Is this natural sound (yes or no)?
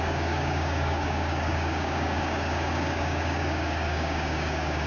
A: no